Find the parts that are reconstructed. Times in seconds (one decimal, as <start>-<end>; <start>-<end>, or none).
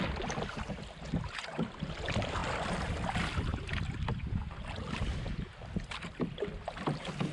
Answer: none